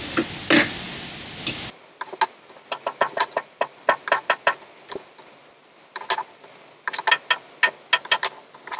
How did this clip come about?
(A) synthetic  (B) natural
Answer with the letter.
B